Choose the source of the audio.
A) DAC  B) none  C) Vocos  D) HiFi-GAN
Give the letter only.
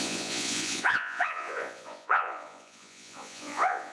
C